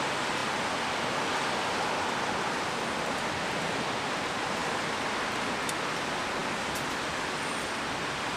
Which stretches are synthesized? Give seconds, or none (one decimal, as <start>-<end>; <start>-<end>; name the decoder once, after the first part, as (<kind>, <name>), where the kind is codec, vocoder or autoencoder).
none